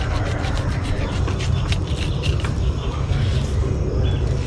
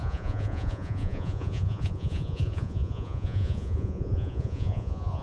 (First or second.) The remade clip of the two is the second